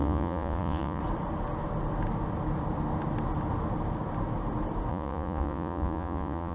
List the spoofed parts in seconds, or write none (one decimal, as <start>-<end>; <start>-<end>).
0.0-1.0; 4.9-6.5